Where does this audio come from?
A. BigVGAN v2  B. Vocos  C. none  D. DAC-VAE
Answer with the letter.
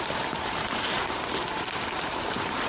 A